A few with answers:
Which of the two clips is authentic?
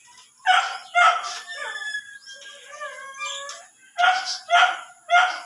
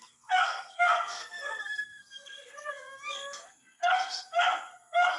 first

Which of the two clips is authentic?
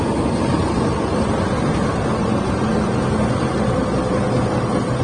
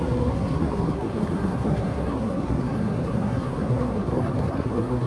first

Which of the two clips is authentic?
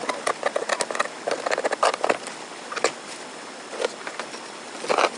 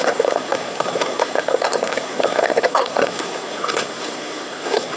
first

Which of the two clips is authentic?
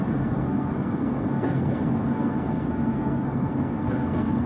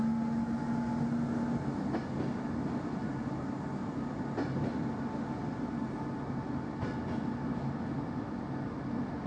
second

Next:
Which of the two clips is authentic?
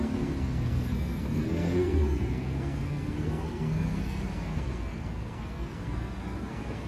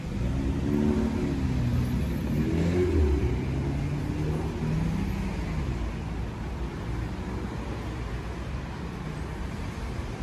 second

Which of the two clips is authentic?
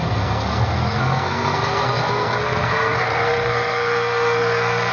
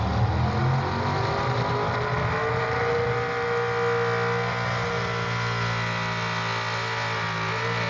second